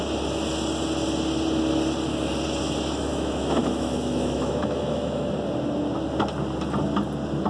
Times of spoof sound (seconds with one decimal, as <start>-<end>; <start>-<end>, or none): 3.1-5.3